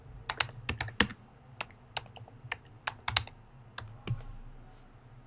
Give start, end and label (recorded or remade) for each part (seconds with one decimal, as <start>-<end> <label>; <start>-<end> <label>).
0.0-5.3 recorded